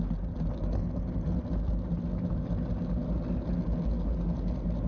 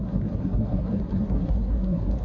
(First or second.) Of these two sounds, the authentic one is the first